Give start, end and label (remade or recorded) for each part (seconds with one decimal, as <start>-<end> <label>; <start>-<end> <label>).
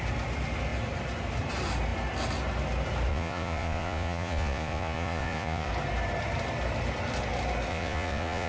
0.0-3.1 recorded; 3.1-5.7 remade; 5.7-7.7 recorded; 7.7-8.5 remade